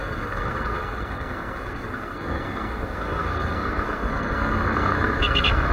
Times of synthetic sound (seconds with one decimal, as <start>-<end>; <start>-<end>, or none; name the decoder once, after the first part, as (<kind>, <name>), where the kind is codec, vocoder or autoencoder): 0.0-5.7 (codec, SNAC)